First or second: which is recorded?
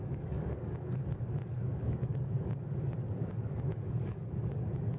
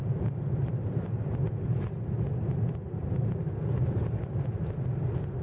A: second